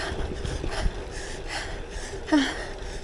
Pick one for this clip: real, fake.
real